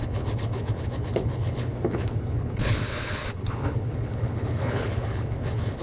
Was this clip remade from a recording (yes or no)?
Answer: yes